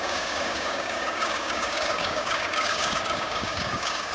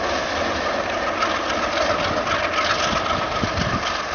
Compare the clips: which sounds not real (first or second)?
first